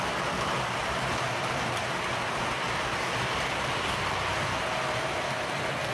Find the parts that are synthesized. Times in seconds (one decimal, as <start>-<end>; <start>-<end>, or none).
none